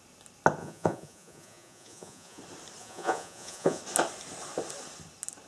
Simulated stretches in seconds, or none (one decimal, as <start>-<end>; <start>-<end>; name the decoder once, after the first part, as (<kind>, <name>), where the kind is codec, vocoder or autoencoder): 0.6-2.4 (vocoder, Vocos); 2.8-3.8